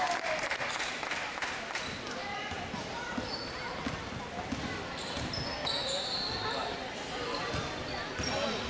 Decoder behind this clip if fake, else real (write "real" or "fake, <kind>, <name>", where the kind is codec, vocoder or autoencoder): real